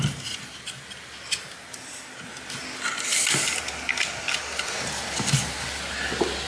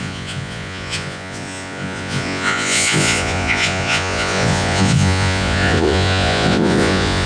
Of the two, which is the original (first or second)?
first